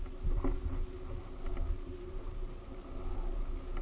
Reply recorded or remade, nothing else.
recorded